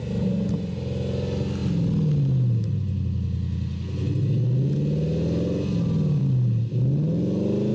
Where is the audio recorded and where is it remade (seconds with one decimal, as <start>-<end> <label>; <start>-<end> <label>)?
0.0-7.7 recorded